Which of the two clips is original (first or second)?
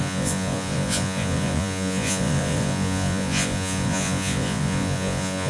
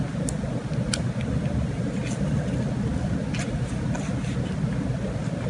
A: second